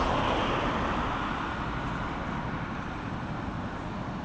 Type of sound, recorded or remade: recorded